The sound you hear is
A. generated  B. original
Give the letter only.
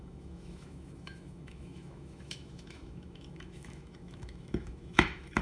A